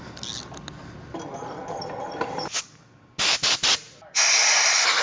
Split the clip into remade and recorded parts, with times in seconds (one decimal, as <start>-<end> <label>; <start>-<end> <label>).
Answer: 0.0-5.0 recorded